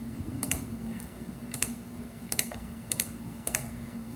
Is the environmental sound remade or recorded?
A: remade